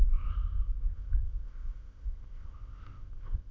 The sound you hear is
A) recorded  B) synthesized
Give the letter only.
B